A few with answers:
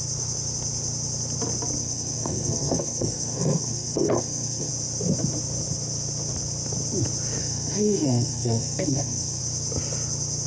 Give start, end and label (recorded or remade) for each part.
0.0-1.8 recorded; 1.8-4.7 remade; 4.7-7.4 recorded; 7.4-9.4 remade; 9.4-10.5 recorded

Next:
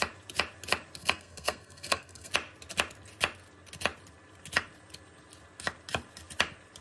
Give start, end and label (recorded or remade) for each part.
0.0-1.0 recorded; 1.0-2.3 remade; 2.3-6.8 recorded

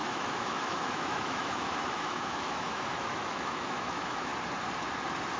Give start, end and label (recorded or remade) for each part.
0.0-4.3 remade; 4.3-5.4 recorded

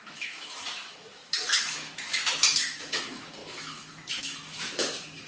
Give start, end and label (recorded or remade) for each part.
0.0-5.3 remade

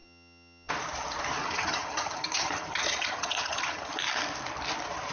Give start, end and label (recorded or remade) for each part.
0.0-0.7 remade; 0.7-1.4 recorded; 1.4-3.9 remade; 3.9-5.1 recorded

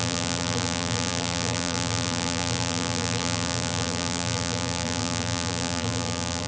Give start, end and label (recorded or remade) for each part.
0.0-6.5 remade